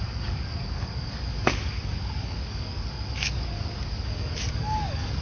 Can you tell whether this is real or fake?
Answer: fake